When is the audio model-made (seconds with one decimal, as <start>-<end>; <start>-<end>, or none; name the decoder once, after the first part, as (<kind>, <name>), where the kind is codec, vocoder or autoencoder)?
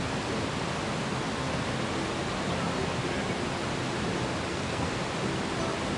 4.5-5.0 (codec, SNAC)